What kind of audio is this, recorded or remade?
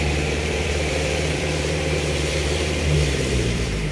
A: remade